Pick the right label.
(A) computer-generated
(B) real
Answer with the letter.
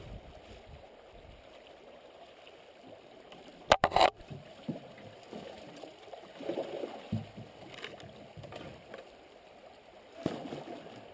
B